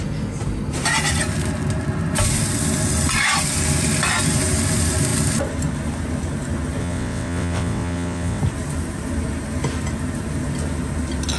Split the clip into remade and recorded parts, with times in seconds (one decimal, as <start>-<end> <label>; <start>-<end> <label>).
0.0-6.8 recorded; 6.8-8.4 remade; 8.4-11.4 recorded